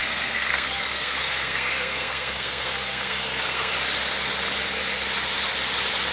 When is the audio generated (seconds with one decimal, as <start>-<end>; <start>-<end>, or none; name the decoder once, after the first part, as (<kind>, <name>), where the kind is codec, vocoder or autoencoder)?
0.0-3.7 (codec, SNAC)